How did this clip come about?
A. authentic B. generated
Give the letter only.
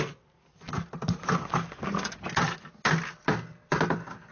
A